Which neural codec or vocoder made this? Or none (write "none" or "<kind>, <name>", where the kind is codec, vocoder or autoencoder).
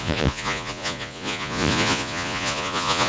vocoder, Vocos